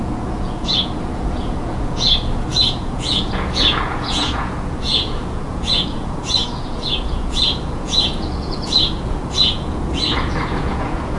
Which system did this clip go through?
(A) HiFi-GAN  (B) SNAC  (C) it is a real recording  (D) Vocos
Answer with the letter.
D